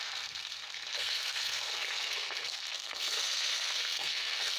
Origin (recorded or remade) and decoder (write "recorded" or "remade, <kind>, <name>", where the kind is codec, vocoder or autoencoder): remade, codec, SNAC